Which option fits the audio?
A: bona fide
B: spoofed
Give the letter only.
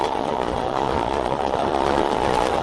B